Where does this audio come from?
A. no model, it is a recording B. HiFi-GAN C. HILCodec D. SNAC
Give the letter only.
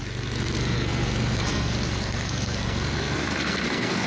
D